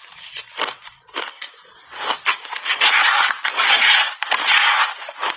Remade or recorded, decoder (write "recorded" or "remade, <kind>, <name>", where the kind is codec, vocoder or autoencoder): recorded